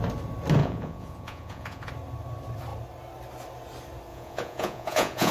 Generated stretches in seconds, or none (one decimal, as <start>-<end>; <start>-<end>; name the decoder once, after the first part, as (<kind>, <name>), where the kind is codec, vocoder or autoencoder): 0.6-1.9 (vocoder, Vocos); 4.1-5.3